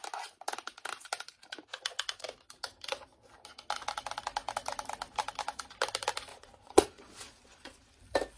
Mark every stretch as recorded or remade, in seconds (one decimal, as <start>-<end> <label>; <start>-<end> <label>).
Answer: 0.0-6.3 recorded; 6.3-8.0 remade; 8.0-8.4 recorded